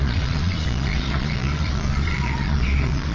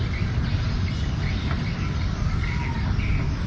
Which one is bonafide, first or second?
second